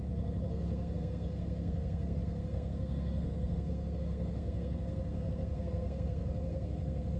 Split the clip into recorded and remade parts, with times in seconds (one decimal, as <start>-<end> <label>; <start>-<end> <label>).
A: 0.0-7.2 remade

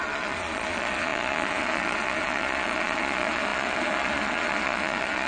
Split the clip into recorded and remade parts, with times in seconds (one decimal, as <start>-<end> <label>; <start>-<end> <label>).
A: 0.0-5.3 remade